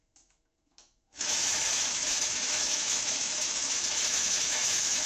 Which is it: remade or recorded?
remade